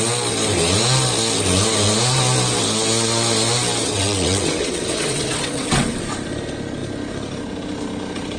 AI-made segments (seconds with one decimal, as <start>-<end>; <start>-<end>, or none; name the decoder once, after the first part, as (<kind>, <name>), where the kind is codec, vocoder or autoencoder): 3.8-6.0 (vocoder, WaveNeXt)

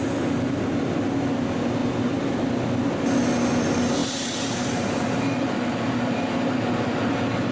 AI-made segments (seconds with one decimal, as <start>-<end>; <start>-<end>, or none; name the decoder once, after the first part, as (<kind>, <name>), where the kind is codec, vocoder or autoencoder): 4.0-6.7 (vocoder, BigVGAN v2)

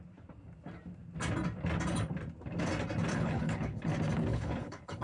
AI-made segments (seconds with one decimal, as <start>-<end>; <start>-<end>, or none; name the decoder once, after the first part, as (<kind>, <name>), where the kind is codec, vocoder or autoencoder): 3.1-3.9 (codec, HILCodec); 4.3-5.0

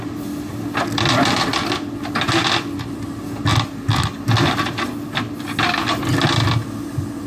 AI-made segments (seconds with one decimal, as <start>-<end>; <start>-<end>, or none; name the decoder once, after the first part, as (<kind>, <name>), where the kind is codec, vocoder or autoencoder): none

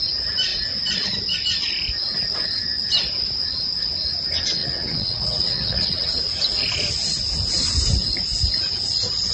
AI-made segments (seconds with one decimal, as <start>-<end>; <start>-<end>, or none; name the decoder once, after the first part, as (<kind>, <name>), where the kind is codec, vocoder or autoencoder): 4.6-6.1 (vocoder, WaveNeXt)

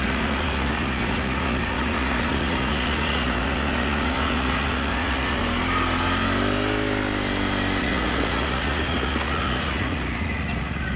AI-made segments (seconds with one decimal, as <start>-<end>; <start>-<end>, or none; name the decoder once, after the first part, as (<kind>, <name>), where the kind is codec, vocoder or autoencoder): 0.0-5.4 (vocoder, Vocos); 7.8-11.0